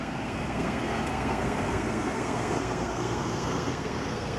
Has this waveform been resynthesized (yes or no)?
yes